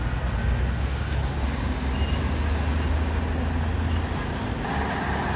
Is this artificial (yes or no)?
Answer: no